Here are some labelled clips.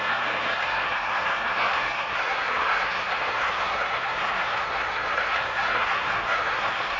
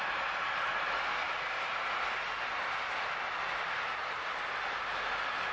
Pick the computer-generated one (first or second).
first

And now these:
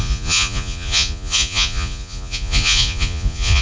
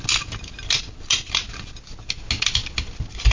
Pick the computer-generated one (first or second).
first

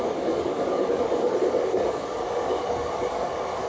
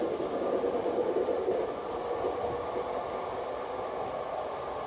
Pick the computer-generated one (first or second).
first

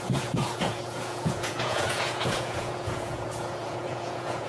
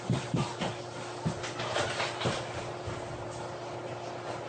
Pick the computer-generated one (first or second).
first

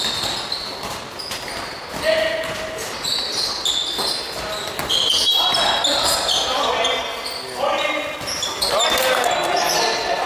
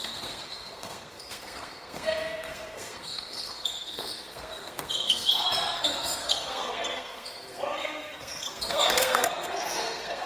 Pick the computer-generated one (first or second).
second